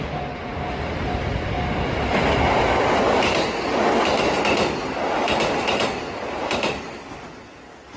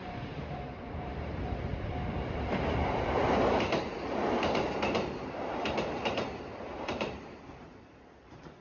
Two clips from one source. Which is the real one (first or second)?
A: first